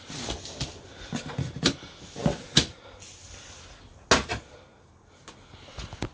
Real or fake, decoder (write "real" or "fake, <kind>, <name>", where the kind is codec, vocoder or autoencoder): real